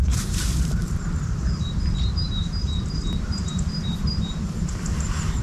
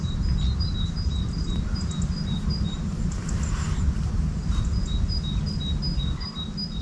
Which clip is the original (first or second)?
second